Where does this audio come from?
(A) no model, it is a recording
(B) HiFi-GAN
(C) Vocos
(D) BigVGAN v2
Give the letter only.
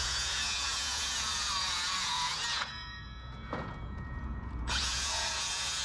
C